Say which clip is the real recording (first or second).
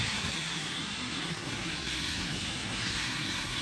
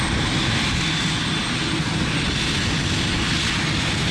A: second